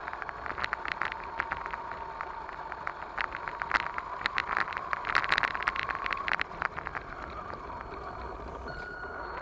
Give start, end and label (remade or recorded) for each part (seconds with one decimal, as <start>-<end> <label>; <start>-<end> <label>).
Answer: 0.0-4.4 recorded; 4.4-9.4 remade